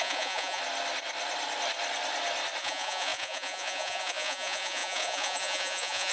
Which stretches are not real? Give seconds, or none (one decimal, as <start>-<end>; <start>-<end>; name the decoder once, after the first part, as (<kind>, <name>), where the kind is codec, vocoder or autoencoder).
0.0-0.6 (vocoder, Vocos); 2.6-6.1